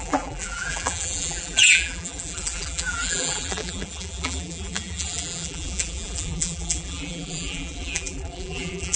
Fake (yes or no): yes